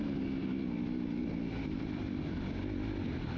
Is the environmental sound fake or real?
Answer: real